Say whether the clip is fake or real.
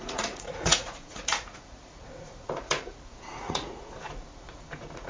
fake